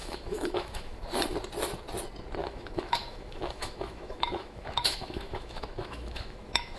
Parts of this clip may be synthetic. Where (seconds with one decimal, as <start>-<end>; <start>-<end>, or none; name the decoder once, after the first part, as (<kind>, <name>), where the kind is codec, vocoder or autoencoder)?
0.0-1.0 (autoencoder, DAC-VAE); 2.4-6.8